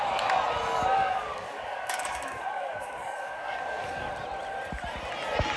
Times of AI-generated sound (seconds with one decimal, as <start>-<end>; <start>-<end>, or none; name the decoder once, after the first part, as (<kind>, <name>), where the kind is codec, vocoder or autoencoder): 0.7-4.1 (codec, DAC)